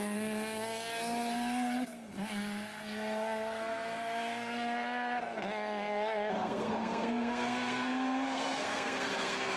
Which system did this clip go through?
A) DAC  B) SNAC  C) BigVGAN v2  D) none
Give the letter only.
B